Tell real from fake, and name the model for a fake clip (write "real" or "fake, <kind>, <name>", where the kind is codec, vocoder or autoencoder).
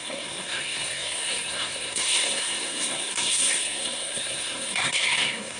fake, codec, SNAC